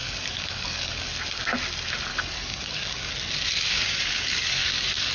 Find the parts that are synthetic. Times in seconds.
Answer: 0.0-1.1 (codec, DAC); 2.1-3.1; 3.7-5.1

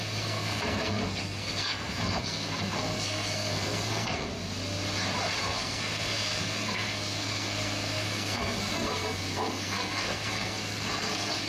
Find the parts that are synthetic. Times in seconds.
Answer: 0.0-4.3 (codec, SNAC); 5.4-11.5

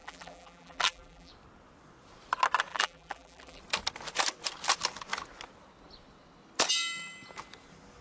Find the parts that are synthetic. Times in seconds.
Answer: 0.0-1.3 (vocoder, BigVGAN v2); 2.7-3.6

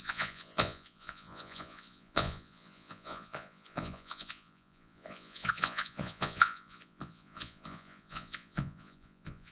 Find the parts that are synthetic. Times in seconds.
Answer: 0.0-9.5 (vocoder, Vocos)

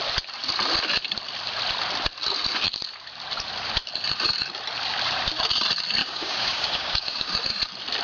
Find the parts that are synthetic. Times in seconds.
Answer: 6.0-7.3 (codec, DAC)